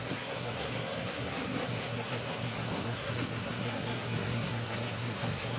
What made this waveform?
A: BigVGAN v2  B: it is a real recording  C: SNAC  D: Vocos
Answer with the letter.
C